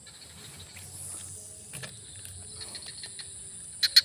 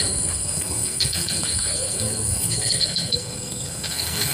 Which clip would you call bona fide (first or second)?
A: first